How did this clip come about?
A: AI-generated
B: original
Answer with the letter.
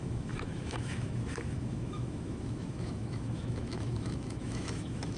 A